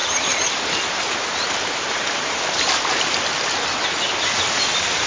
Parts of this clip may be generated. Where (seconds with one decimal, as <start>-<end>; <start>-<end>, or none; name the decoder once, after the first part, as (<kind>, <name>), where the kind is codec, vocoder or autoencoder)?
0.0-3.1 (vocoder, BigVGAN v2)